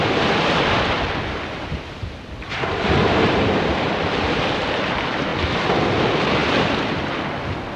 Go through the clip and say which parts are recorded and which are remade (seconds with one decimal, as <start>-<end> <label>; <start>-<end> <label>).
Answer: 0.0-7.8 recorded